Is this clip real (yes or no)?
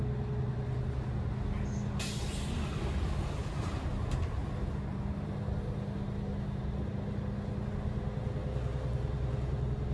yes